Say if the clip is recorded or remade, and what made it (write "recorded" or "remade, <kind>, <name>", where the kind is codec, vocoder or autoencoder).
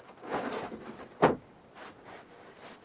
recorded